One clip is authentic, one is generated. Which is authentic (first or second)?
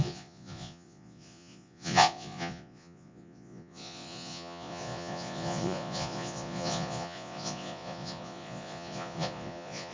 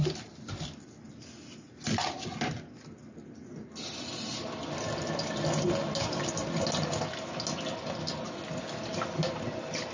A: second